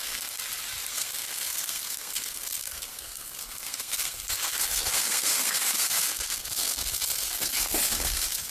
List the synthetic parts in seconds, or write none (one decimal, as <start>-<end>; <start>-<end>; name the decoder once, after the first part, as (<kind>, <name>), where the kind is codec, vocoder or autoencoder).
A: 0.0-0.4 (codec, SNAC); 0.9-8.5